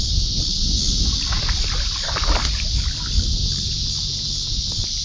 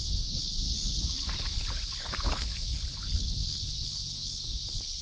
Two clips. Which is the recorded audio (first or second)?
first